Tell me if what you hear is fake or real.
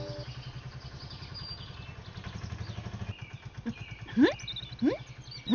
real